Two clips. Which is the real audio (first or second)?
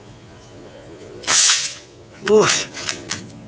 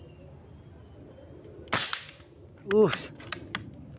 second